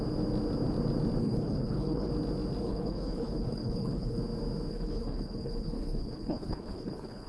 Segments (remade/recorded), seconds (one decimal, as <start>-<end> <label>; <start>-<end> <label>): 0.0-1.2 recorded; 1.2-2.1 remade; 2.1-2.6 recorded; 2.6-4.2 remade; 4.2-4.7 recorded; 4.7-7.3 remade